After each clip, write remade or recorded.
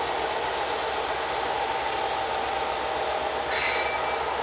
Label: recorded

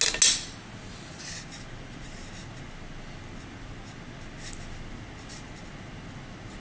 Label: recorded